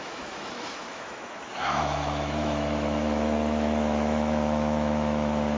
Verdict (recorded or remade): remade